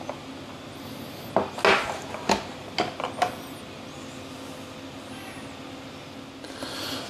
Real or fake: real